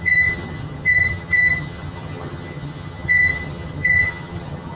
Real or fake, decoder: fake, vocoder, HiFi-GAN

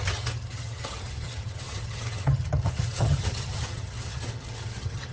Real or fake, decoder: fake, vocoder, HiFi-GAN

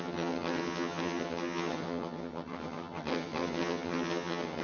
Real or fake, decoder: fake, vocoder, HiFi-GAN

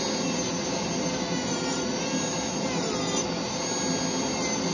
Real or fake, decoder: real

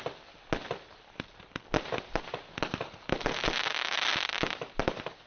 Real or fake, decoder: real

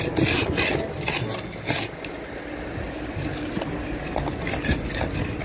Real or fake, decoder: real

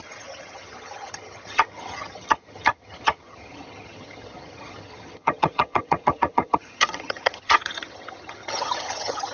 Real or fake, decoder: fake, vocoder, HiFi-GAN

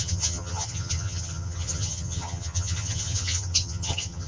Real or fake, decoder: fake, vocoder, HiFi-GAN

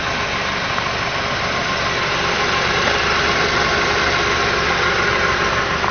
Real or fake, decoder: real